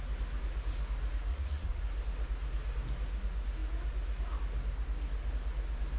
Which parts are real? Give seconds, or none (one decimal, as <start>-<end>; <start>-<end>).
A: 0.0-1.3; 1.8-6.0